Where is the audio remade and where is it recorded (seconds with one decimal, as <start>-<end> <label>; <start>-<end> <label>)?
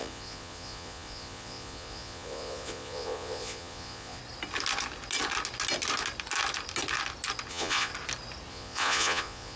0.0-4.2 remade; 4.2-7.5 recorded; 7.5-7.9 remade; 7.9-8.5 recorded; 8.5-9.6 remade